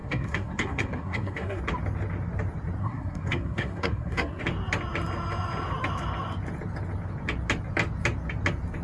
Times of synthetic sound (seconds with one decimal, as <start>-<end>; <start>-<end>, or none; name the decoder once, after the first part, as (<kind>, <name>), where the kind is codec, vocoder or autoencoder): 0.0-1.6 (codec, SNAC); 2.8-4.4